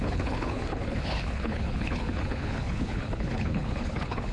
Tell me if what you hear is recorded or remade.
remade